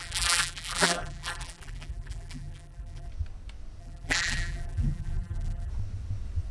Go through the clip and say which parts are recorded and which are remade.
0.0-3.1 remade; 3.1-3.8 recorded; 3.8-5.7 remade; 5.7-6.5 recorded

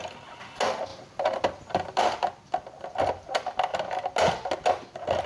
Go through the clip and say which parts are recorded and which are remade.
0.0-5.3 recorded

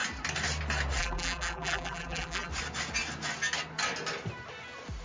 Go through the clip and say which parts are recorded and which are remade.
0.0-1.0 recorded; 1.0-2.5 remade; 2.5-5.0 recorded

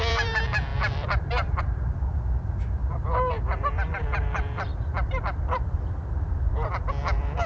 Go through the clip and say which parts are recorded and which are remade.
0.0-7.5 remade

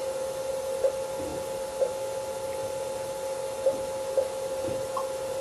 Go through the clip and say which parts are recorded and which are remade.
0.0-0.5 recorded; 0.5-2.6 remade; 2.6-3.7 recorded; 3.7-5.4 remade